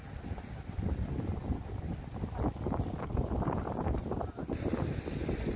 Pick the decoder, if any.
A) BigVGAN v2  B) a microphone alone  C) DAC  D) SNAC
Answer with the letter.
B